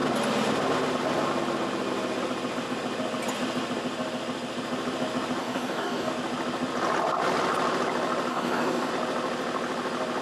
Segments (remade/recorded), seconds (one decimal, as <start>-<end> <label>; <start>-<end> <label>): 0.0-5.4 recorded; 5.4-6.1 remade; 6.1-8.3 recorded; 8.3-8.9 remade; 8.9-10.2 recorded